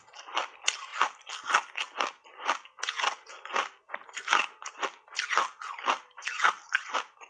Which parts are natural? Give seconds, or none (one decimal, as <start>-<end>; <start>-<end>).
0.0-7.3